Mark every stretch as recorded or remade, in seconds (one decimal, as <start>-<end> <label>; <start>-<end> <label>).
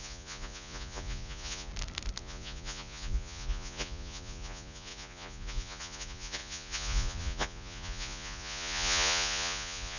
0.0-1.7 remade; 1.7-2.2 recorded; 2.2-10.0 remade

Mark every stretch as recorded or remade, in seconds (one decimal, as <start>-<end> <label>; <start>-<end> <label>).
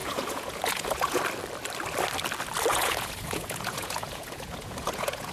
0.0-1.2 remade; 1.2-2.7 recorded; 2.7-5.3 remade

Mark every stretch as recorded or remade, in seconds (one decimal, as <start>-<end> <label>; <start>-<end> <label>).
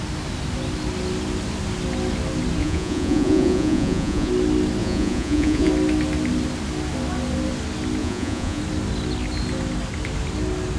0.0-2.6 recorded; 2.6-4.3 remade; 4.3-4.8 recorded; 4.8-5.7 remade; 5.7-8.0 recorded; 8.0-8.6 remade; 8.6-10.8 recorded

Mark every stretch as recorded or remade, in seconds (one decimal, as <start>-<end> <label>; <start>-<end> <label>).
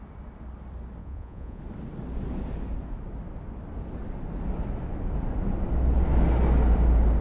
0.0-1.0 recorded; 1.0-1.6 remade; 1.6-7.2 recorded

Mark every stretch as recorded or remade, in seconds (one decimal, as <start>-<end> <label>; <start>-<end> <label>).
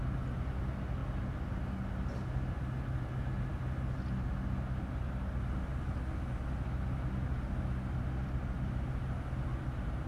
0.0-10.1 recorded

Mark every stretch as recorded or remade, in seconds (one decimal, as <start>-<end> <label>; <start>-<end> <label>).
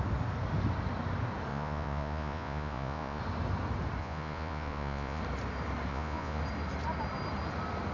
0.0-1.5 recorded; 1.5-3.2 remade; 3.2-4.0 recorded; 4.0-5.2 remade; 5.2-5.9 recorded; 5.9-6.4 remade; 6.4-7.9 recorded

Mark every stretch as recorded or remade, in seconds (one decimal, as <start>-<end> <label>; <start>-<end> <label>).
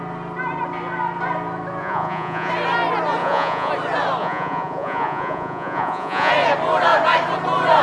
0.0-1.8 recorded; 1.8-2.5 remade; 2.5-3.2 recorded; 3.2-3.7 remade; 3.7-4.2 recorded; 4.2-6.3 remade; 6.3-7.8 recorded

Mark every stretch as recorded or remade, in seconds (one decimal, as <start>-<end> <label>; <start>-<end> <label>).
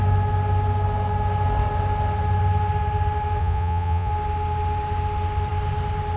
0.0-3.4 recorded; 3.4-4.1 remade; 4.1-6.2 recorded